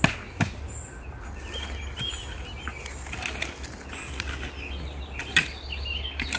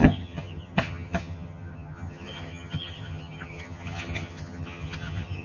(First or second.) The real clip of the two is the first